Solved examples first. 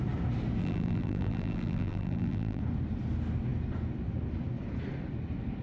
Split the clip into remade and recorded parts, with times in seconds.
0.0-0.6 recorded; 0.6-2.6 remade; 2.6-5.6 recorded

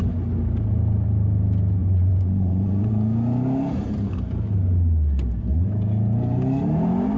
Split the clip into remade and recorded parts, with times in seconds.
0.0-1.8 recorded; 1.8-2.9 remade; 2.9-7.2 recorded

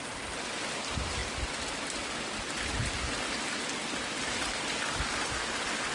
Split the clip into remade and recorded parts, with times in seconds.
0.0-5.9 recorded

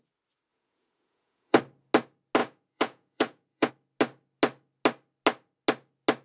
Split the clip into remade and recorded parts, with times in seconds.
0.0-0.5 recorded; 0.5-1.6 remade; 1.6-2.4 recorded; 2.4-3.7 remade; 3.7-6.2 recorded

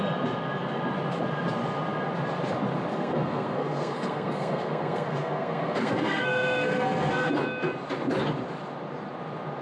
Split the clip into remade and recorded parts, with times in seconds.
0.0-2.9 recorded; 2.9-7.3 remade; 7.3-9.6 recorded

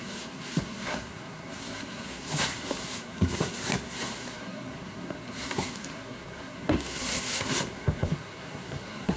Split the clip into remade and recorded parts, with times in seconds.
0.0-9.2 remade

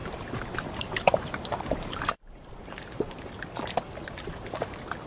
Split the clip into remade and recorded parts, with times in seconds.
0.0-2.5 remade; 2.5-5.1 recorded